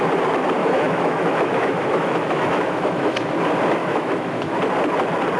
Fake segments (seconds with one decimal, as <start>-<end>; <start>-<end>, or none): 0.6-3.3; 3.8-4.6